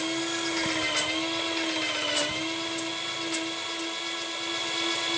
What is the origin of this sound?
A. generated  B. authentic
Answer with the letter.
B